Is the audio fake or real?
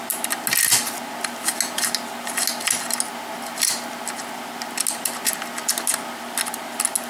real